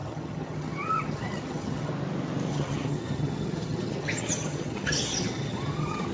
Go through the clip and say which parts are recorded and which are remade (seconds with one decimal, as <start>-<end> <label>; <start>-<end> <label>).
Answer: 0.0-1.9 remade; 1.9-2.5 recorded; 2.5-6.1 remade

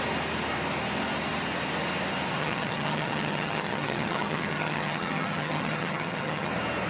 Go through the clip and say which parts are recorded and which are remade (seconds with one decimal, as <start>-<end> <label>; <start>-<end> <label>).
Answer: 0.0-2.4 recorded; 2.4-6.5 remade; 6.5-6.9 recorded